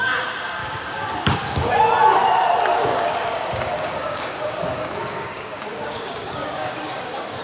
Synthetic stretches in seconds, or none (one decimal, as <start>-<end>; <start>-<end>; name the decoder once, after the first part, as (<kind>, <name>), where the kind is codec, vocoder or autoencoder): 0.6-1.8 (codec, DAC); 2.7-7.4